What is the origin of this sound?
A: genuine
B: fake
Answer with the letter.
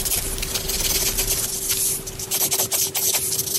A